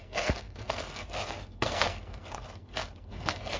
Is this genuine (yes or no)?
no